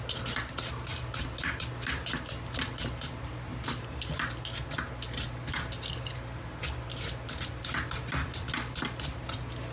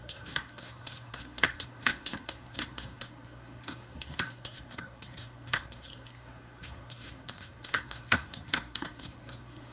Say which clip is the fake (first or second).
second